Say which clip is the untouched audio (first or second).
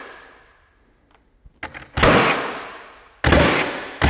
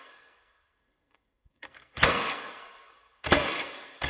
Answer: first